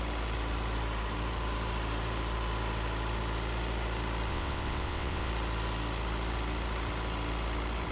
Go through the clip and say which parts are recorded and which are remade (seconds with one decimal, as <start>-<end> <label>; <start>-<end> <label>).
0.0-4.3 recorded; 4.3-5.3 remade; 5.3-7.9 recorded